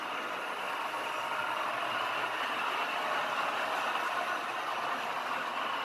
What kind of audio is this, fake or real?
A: real